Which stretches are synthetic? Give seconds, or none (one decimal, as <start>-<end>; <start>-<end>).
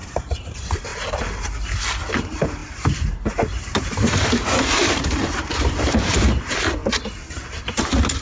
0.0-0.9; 2.1-6.8